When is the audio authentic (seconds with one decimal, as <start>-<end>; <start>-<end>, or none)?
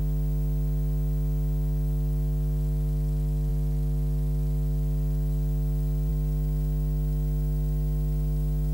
0.0-8.7